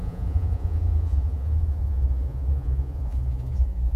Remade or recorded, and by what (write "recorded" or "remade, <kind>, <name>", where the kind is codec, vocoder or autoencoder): remade, vocoder, Vocos